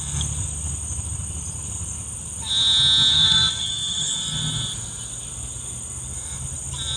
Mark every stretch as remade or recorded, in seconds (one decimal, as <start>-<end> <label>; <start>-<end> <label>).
0.0-3.1 recorded; 3.1-4.1 remade; 4.1-7.0 recorded